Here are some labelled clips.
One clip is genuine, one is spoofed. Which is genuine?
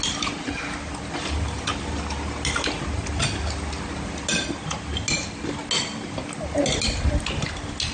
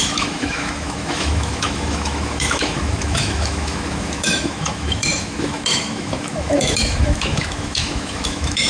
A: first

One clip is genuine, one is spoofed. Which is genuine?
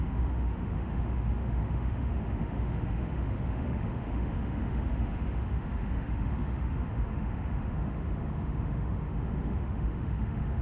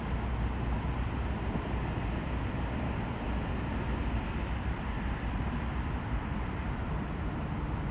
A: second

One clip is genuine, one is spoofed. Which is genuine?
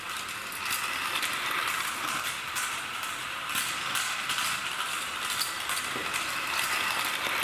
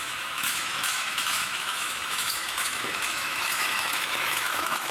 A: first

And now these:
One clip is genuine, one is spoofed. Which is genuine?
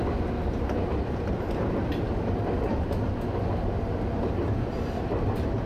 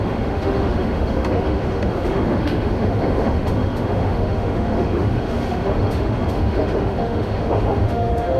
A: first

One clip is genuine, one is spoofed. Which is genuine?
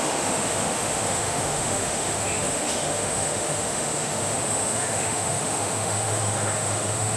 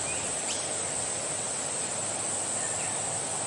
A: second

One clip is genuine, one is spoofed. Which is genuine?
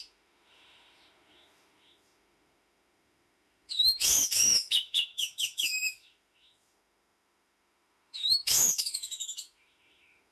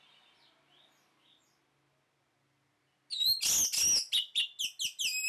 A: second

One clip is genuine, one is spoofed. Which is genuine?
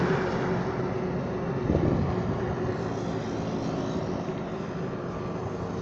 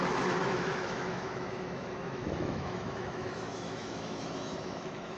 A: first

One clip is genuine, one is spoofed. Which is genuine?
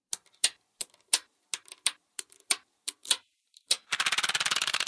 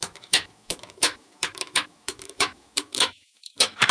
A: first